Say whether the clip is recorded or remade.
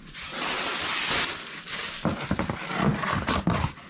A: recorded